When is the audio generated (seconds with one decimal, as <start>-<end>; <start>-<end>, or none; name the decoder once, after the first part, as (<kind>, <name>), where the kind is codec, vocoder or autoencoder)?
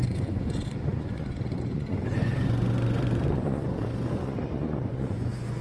0.0-5.6 (vocoder, Vocos)